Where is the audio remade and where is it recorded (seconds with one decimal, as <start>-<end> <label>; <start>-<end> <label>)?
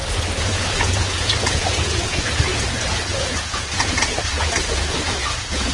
0.0-0.6 recorded; 0.6-5.7 remade